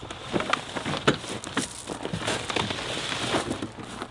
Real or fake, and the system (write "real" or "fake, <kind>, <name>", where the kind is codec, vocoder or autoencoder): real